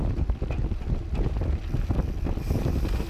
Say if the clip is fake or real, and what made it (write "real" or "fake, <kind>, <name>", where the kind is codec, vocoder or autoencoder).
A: real